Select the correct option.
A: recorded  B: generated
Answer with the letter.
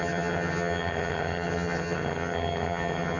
B